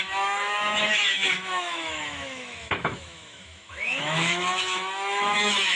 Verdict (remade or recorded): remade